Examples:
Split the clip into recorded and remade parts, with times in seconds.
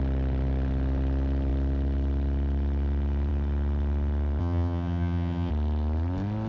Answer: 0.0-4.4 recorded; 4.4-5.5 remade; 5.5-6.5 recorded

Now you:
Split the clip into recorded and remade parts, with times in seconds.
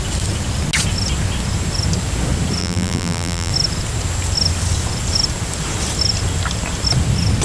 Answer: 0.0-2.6 recorded; 2.6-3.5 remade; 3.5-7.4 recorded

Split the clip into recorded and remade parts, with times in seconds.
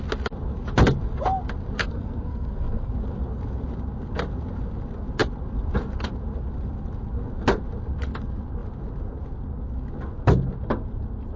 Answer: 0.0-1.8 recorded; 1.8-2.9 remade; 2.9-11.4 recorded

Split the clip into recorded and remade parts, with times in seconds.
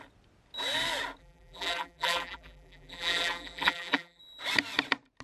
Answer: 0.0-1.2 recorded; 1.2-4.2 remade; 4.2-5.2 recorded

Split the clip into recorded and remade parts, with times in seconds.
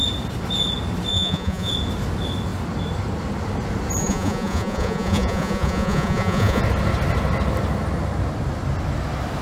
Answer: 0.0-1.1 recorded; 1.1-1.7 remade; 1.7-4.0 recorded; 4.0-6.6 remade; 6.6-9.4 recorded